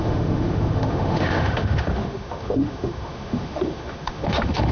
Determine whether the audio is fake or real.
fake